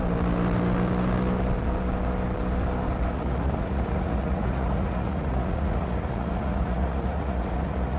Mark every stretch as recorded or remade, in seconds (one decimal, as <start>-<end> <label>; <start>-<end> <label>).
0.0-3.1 recorded; 3.1-8.0 remade